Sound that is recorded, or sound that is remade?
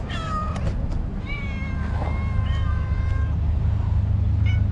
recorded